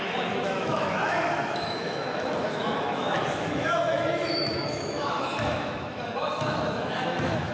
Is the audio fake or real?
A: fake